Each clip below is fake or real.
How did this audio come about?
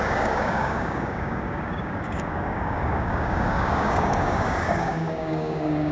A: fake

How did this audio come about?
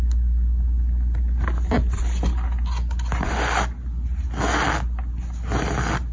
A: real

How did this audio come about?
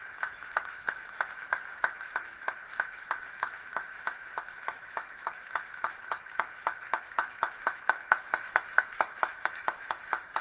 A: fake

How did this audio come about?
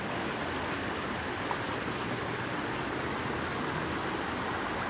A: real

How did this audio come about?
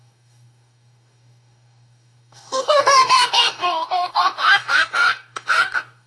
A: fake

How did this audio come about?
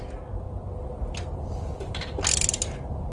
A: real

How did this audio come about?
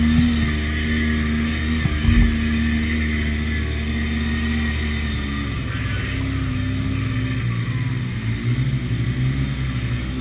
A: real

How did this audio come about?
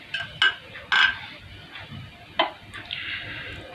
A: real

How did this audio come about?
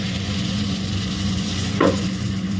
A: fake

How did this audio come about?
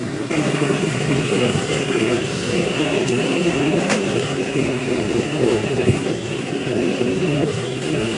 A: fake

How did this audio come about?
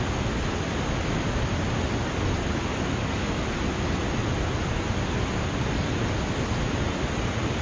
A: real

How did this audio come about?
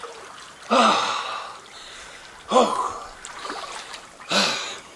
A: real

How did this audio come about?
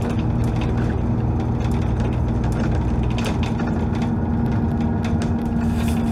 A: real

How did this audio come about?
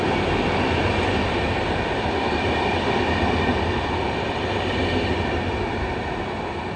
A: real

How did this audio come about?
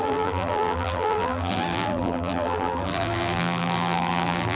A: fake